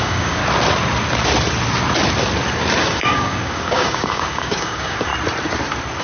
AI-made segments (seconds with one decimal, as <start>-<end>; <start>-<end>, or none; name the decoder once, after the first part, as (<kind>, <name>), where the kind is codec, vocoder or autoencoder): 0.0-0.4 (codec, DAC); 2.8-5.1